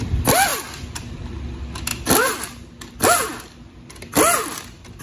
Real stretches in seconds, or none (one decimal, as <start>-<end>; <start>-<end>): 0.0-5.0